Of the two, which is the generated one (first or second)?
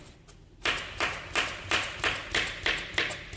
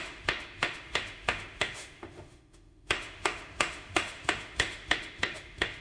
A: second